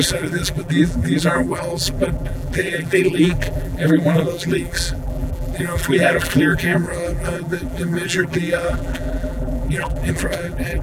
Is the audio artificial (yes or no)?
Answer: yes